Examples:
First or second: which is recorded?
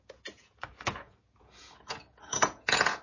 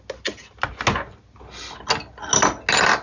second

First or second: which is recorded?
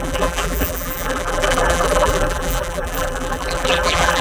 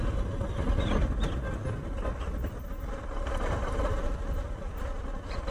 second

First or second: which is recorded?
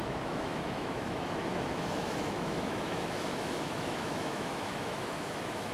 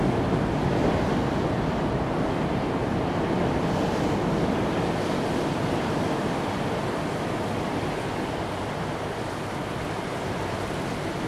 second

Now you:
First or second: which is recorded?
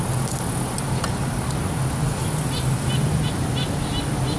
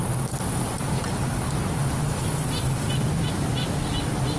first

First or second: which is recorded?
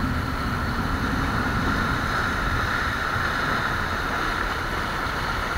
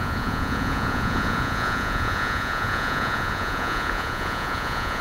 first